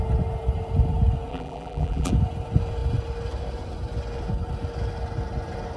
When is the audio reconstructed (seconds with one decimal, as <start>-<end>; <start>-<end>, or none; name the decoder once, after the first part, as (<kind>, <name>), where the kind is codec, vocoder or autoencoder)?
1.3-2.1 (vocoder, BigVGAN v2)